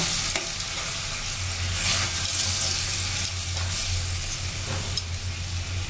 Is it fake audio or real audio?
real